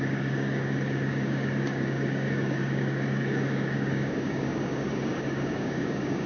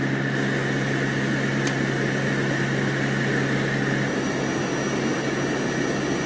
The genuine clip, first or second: second